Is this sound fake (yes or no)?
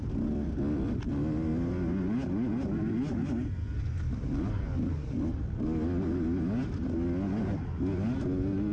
no